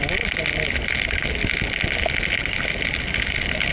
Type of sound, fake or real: real